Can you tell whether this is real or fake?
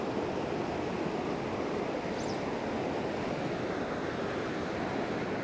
real